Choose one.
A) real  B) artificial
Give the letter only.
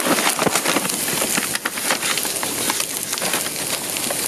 A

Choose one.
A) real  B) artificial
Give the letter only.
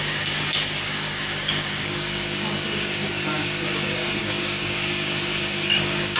B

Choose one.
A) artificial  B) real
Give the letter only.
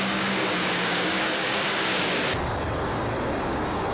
A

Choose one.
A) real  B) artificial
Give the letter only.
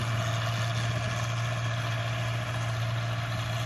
A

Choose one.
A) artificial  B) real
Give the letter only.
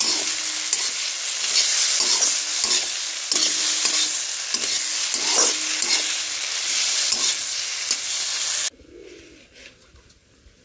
B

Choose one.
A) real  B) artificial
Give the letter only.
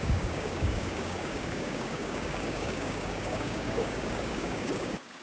B